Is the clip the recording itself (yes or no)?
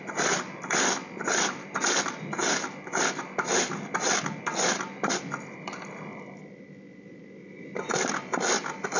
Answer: yes